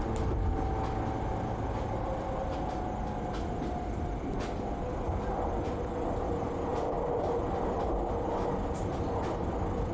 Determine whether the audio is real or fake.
real